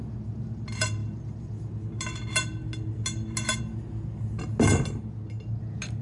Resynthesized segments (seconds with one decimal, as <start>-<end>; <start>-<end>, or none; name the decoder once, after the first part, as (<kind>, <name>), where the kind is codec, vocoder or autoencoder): none

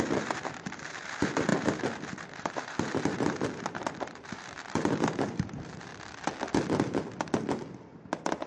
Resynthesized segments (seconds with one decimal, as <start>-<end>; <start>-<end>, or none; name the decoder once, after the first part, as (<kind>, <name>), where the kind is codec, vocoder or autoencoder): 0.0-5.9 (vocoder, BigVGAN v2)

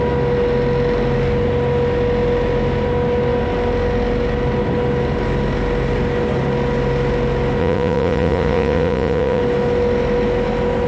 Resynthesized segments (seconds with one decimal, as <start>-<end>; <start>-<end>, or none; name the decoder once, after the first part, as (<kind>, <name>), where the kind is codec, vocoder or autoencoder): 7.6-9.4 (vocoder, Vocos)

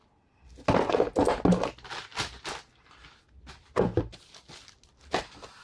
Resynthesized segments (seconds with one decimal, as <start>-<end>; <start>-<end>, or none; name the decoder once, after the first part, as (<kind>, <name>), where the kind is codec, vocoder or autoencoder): none

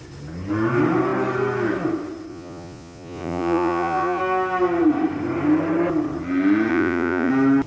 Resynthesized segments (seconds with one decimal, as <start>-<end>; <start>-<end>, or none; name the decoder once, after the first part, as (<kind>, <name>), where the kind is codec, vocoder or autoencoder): 2.3-4.2 (vocoder, Vocos); 6.7-7.3

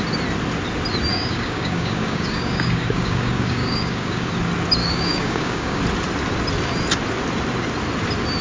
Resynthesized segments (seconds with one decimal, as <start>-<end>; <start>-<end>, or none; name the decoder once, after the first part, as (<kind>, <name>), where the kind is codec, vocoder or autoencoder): 1.1-4.3 (codec, DAC); 4.8-5.8

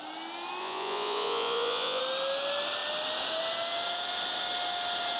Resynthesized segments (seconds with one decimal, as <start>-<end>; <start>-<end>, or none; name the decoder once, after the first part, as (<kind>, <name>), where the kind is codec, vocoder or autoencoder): 0.6-2.0 (vocoder, Vocos)